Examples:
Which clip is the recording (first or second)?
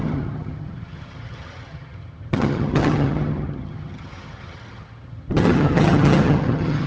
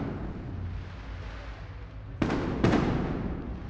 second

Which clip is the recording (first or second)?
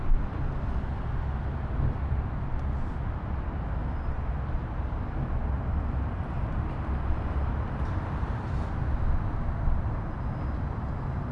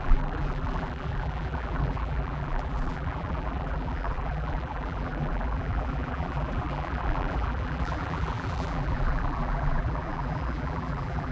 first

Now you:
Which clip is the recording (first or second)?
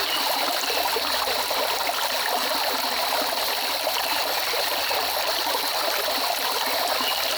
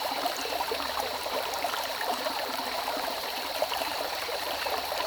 first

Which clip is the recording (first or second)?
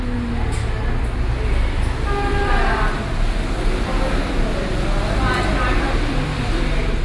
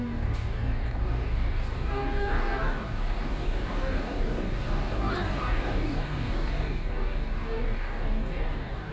first